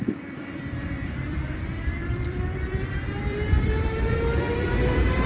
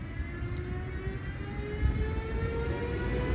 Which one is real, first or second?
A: second